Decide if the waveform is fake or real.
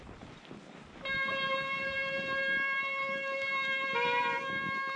real